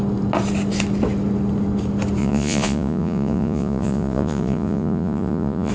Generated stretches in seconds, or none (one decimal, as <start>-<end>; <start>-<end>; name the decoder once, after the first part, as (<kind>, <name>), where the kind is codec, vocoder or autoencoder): 2.2-5.7 (vocoder, Vocos)